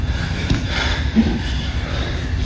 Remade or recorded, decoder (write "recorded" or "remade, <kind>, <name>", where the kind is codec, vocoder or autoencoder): remade, vocoder, BigVGAN v2